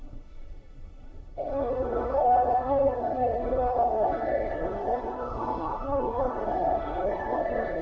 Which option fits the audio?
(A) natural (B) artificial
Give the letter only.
B